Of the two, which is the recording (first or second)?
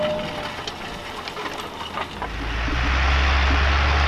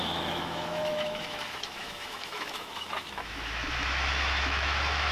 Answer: first